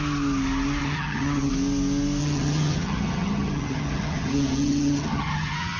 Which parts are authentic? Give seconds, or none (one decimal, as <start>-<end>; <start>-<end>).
0.0-0.8; 1.5-2.2